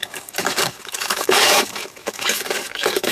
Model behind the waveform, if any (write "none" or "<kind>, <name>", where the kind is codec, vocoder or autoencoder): codec, DAC